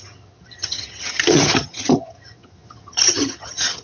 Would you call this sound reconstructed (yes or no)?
yes